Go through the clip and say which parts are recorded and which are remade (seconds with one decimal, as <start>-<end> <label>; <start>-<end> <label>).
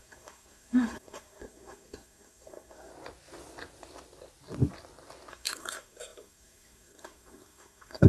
0.0-2.9 remade; 2.9-5.3 recorded; 5.3-8.1 remade